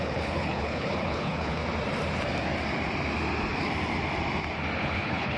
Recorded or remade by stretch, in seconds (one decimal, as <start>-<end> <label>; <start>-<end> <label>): 0.0-1.6 remade; 1.6-4.8 recorded; 4.8-5.4 remade